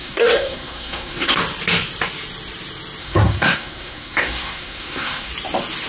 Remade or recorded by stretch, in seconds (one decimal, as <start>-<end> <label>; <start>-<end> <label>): 0.0-1.4 remade; 1.4-3.0 recorded; 3.0-5.3 remade; 5.3-5.9 recorded